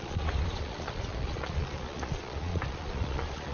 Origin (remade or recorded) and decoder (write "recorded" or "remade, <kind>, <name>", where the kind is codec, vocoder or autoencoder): remade, vocoder, Vocos